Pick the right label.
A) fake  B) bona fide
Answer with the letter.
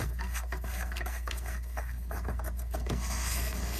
A